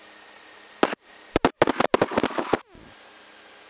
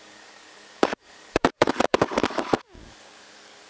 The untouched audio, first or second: first